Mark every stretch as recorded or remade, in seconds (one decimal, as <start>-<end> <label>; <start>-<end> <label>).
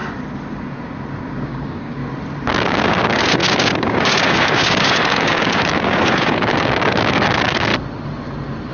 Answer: 0.0-1.4 recorded; 1.4-2.0 remade; 2.0-2.5 recorded; 2.5-7.7 remade; 7.7-8.7 recorded